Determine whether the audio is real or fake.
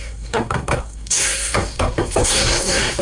fake